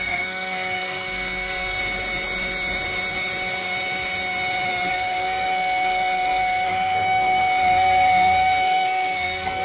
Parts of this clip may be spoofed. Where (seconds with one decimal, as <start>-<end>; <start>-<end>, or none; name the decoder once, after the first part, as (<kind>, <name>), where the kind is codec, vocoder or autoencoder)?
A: 0.0-1.8 (codec, SNAC); 4.9-9.6